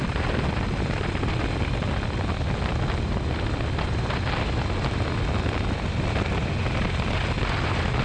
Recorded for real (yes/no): yes